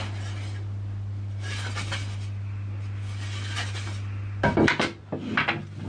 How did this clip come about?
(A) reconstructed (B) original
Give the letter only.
B